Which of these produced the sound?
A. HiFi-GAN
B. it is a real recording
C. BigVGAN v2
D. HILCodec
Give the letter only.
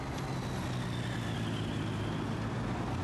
B